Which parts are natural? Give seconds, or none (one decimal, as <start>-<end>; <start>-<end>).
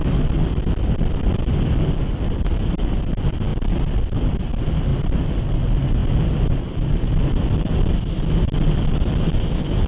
0.0-9.9